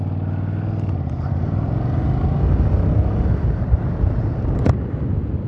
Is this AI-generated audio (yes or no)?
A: no